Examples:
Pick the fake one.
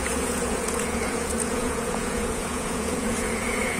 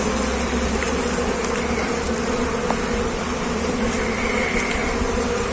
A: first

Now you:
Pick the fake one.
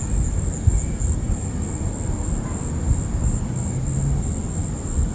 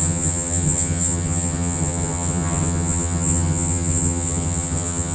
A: second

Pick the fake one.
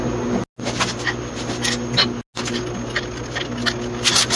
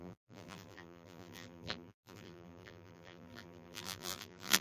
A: second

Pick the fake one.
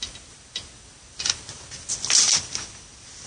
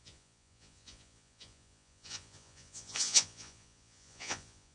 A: second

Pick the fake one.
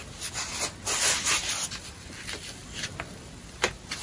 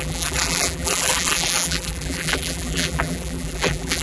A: second